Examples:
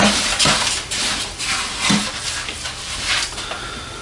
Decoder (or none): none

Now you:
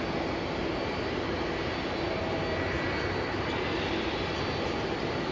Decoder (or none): none